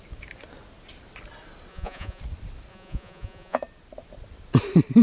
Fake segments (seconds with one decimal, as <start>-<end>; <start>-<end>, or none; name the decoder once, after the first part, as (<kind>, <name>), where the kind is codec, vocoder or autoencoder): 1.7-2.2 (vocoder, Vocos); 2.7-3.6